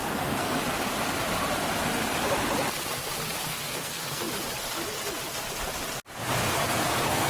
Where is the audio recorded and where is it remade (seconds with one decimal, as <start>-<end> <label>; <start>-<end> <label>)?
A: 0.0-0.6 remade; 0.6-3.5 recorded; 3.5-4.3 remade; 4.3-6.4 recorded; 6.4-7.3 remade